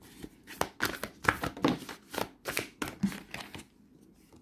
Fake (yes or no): no